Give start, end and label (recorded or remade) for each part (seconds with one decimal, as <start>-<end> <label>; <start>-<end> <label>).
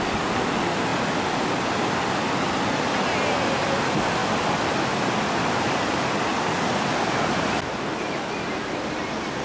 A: 0.0-9.4 recorded